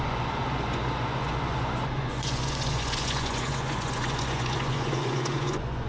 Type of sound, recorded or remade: remade